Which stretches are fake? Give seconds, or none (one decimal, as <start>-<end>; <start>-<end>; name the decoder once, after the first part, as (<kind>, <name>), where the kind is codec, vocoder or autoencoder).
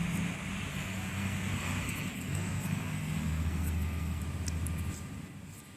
0.7-4.2 (codec, SNAC)